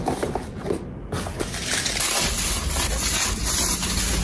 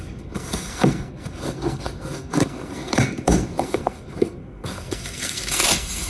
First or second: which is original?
first